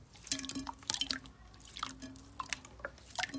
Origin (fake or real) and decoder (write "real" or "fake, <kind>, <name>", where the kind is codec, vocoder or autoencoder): real